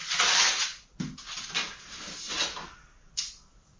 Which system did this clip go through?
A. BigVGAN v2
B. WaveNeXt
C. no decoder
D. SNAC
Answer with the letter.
C